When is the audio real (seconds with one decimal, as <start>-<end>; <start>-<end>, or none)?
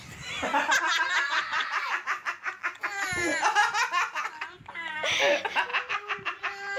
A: 0.0-1.5; 2.6-5.7